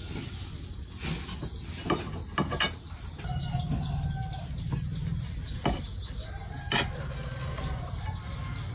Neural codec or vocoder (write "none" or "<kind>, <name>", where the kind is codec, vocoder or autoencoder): none